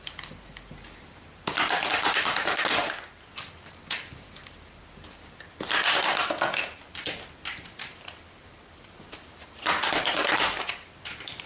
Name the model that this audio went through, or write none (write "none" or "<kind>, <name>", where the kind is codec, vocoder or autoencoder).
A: vocoder, BigVGAN v2